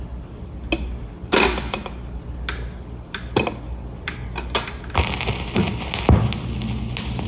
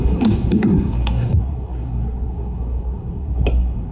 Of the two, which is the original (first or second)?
first